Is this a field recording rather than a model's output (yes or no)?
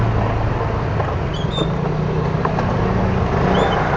yes